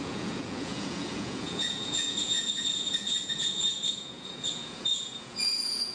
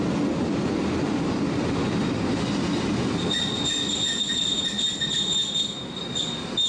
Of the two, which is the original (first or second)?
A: second